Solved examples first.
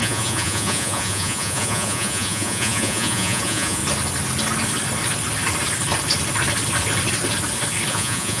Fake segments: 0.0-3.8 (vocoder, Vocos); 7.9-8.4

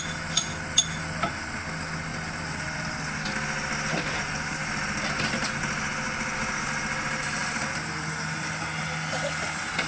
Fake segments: none